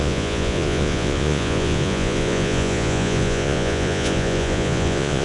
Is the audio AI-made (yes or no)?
yes